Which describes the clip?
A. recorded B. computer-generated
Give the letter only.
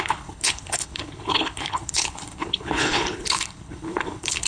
B